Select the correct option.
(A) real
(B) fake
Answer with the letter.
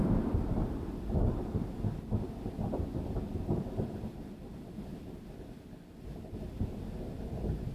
A